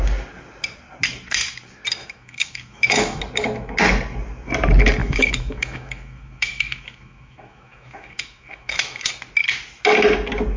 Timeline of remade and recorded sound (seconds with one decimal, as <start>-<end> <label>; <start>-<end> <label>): 0.0-2.0 recorded; 2.0-3.2 remade; 3.2-5.0 recorded; 5.0-9.1 remade; 9.1-10.6 recorded